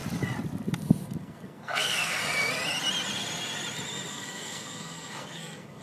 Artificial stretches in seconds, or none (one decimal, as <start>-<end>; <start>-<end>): 1.2-2.2; 4.1-5.8